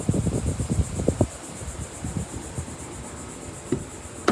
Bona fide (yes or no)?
no